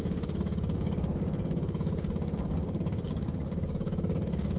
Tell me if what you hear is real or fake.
fake